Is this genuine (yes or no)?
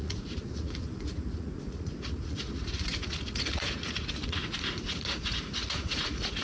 no